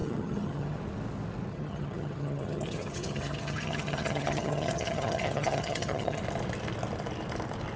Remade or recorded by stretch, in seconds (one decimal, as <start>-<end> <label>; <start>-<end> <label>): 0.0-0.8 remade; 0.8-1.5 recorded; 1.5-6.2 remade; 6.2-7.8 recorded